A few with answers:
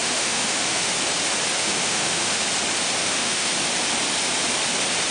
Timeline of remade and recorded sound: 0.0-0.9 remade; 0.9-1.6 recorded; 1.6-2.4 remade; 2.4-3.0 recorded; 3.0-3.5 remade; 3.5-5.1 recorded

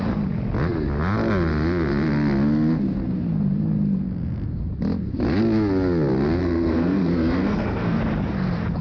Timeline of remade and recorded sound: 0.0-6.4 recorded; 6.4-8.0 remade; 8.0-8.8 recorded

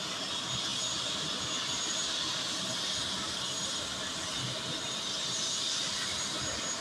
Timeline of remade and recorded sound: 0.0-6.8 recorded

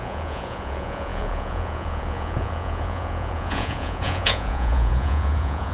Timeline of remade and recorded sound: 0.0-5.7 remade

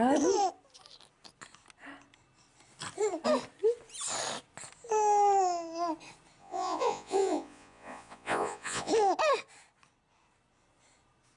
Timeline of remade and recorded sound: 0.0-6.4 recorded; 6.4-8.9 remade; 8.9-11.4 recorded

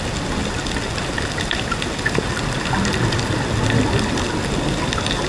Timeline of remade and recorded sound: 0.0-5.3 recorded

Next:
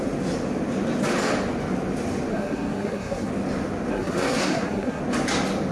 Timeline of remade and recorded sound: 0.0-2.3 recorded; 2.3-3.3 remade; 3.3-3.9 recorded; 3.9-5.0 remade; 5.0-5.7 recorded